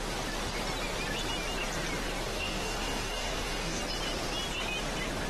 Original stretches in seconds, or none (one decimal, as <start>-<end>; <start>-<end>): 0.0-2.3; 3.8-5.3